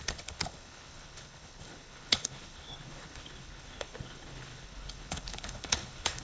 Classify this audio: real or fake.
fake